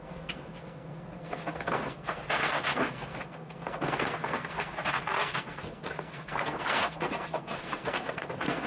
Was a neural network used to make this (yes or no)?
yes